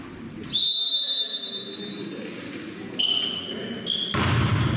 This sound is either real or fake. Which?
real